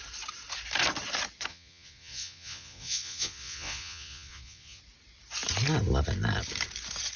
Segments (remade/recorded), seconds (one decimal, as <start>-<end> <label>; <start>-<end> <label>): 0.0-1.5 recorded; 1.5-4.8 remade; 4.8-7.2 recorded